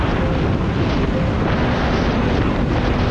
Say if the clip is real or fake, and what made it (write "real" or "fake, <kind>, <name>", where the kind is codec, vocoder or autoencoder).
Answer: real